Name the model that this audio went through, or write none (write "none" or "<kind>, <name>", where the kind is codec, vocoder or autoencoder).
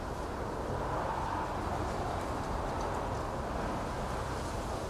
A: none